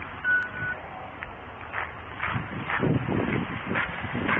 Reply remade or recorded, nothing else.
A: recorded